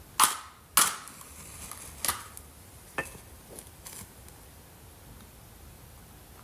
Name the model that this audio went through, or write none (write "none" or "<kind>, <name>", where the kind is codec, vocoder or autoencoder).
none